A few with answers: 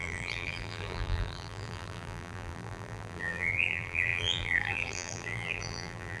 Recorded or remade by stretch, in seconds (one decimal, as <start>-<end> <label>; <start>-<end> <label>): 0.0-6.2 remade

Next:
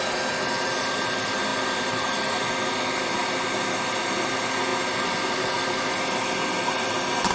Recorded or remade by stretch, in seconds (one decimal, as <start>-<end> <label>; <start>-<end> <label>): 0.0-7.3 recorded

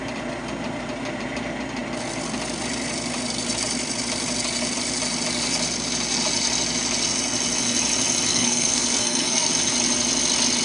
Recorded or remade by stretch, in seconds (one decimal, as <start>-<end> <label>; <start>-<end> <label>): 0.0-8.3 recorded; 8.3-9.5 remade; 9.5-10.6 recorded

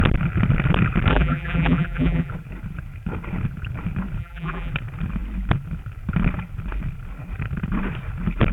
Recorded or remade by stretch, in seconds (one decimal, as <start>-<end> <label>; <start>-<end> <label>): 0.0-1.1 recorded; 1.1-2.3 remade; 2.3-4.2 recorded; 4.2-4.7 remade; 4.7-8.5 recorded

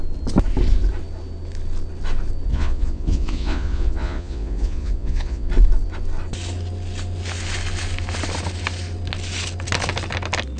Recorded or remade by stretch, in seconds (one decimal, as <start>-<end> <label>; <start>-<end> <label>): 0.0-2.5 recorded; 2.5-5.5 remade; 5.5-10.6 recorded

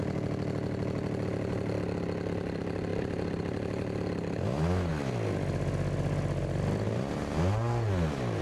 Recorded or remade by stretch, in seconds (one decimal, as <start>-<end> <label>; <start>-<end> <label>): 0.0-2.9 recorded; 2.9-3.4 remade; 3.4-8.4 recorded

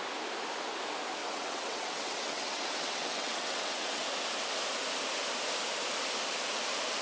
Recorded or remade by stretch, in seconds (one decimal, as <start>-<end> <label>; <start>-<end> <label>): 0.0-1.2 recorded; 1.2-4.0 remade; 4.0-7.0 recorded